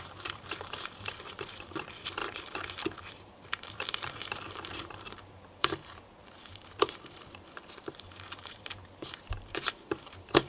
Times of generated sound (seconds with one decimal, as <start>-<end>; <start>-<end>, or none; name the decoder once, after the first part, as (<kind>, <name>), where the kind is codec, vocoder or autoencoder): 0.0-10.5 (vocoder, BigVGAN v2)